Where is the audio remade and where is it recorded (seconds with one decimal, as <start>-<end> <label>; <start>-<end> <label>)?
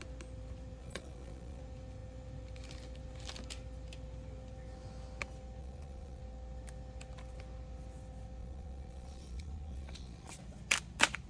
0.0-0.8 recorded; 0.8-1.6 remade; 1.6-5.6 recorded; 5.6-6.2 remade; 6.2-8.4 recorded; 8.4-10.4 remade; 10.4-11.3 recorded